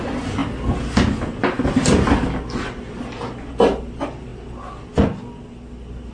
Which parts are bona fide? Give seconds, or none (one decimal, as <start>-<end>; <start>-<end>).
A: 0.0-6.1